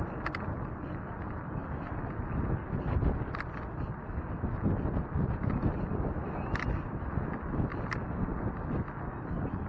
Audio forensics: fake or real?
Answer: real